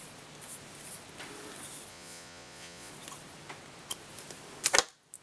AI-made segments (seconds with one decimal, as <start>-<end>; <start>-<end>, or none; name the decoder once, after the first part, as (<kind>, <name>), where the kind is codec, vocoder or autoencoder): 1.9-2.9 (vocoder, Vocos)